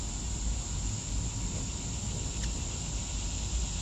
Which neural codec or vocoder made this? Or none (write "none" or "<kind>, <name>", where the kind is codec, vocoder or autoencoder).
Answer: none